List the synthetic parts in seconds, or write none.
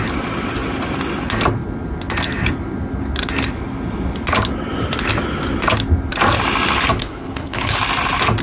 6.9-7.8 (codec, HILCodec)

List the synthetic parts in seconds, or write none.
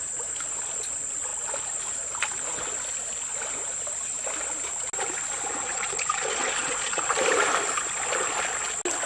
5.5-7.1 (vocoder, Vocos)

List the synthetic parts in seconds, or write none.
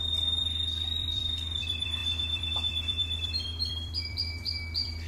0.0-5.1 (vocoder, BigVGAN v2)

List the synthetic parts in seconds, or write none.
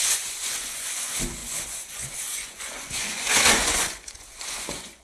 0.0-5.0 (vocoder, Vocos)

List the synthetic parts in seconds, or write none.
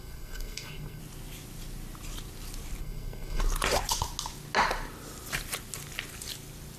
0.0-1.0 (codec, SNAC); 2.8-3.4